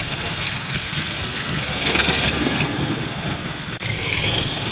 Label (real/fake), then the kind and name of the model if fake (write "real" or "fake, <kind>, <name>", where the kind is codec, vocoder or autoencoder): fake, codec, SNAC